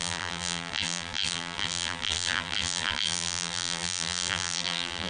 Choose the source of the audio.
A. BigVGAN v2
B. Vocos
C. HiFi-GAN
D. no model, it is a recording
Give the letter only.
A